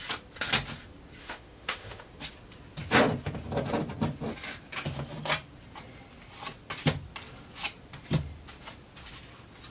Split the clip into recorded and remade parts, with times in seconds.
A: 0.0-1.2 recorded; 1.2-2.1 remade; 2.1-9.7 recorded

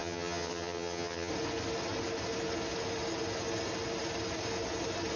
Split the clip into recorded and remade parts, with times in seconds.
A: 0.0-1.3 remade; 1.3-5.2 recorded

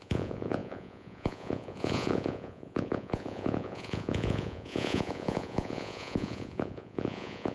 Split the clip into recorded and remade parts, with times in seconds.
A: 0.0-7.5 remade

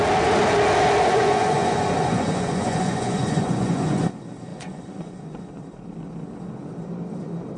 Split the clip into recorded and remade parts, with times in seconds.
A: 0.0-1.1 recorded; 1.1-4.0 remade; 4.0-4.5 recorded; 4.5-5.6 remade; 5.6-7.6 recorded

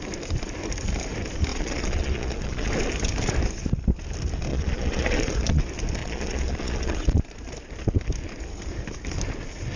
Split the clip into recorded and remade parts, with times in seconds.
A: 0.0-1.5 recorded; 1.5-2.7 remade; 2.7-4.5 recorded; 4.5-5.6 remade; 5.6-6.0 recorded; 6.0-7.2 remade; 7.2-9.8 recorded